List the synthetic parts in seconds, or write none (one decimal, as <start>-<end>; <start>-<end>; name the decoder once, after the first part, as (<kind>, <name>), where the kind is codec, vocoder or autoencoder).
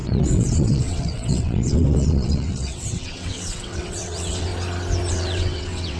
0.0-4.5 (vocoder, WaveNeXt); 5.1-6.0